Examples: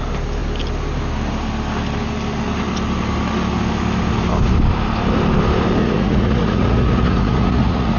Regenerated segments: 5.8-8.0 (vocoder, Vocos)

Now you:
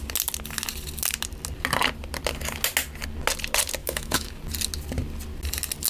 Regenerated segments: 3.8-4.4 (autoencoder, DAC-VAE)